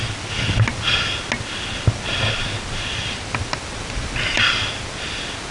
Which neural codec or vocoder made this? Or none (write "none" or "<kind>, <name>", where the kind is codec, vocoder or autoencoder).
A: none